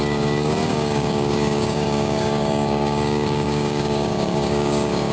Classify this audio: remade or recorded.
remade